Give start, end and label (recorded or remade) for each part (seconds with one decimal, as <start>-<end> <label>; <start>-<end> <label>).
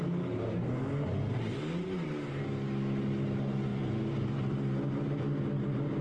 0.0-3.7 recorded; 3.7-5.4 remade; 5.4-6.0 recorded